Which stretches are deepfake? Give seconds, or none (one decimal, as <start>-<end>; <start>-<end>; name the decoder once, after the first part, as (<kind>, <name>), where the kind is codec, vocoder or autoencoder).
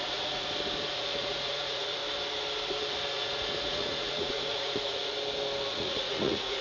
0.0-0.4 (vocoder, Vocos); 0.9-2.0; 3.1-5.1; 5.7-6.6